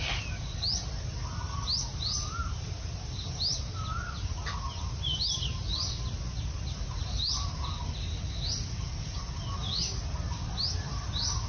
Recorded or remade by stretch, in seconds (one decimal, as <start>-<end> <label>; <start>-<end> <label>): 0.0-11.5 recorded